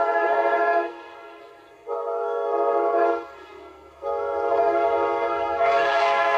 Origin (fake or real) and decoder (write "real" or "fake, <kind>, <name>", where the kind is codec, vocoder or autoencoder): fake, codec, SNAC